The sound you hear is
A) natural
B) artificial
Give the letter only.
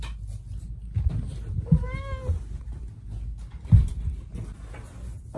A